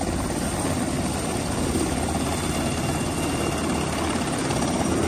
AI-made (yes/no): no